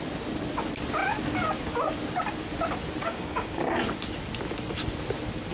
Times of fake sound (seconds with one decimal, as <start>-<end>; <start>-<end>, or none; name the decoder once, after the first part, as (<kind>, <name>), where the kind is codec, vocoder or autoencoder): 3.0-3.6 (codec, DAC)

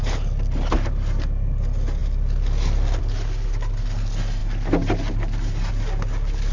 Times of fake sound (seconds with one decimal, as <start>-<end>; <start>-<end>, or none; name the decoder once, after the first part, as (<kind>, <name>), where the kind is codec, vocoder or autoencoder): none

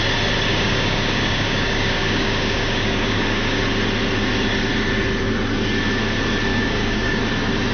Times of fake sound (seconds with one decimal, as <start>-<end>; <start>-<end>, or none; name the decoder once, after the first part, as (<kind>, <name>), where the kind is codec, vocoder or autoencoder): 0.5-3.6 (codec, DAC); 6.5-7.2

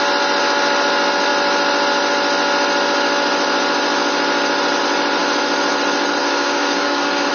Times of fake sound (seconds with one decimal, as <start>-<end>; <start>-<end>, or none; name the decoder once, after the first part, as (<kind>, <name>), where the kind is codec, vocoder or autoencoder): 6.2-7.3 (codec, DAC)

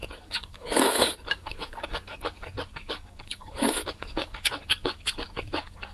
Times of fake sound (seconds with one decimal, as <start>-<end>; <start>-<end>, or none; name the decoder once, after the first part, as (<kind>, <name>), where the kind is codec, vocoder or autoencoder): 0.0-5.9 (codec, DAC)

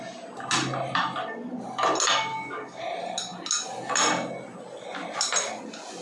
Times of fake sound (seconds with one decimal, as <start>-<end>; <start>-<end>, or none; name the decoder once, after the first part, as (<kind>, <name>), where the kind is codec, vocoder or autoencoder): 2.3-2.8 (codec, DAC)